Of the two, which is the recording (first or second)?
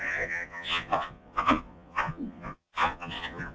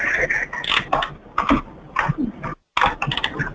second